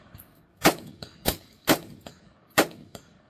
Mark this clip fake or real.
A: fake